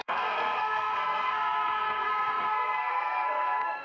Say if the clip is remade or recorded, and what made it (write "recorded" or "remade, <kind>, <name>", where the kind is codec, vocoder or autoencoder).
remade, codec, SNAC